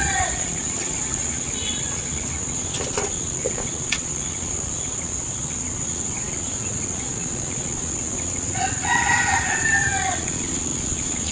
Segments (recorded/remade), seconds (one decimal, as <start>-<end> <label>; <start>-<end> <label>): 0.0-11.3 remade